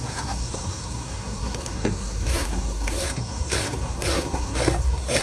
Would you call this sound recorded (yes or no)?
no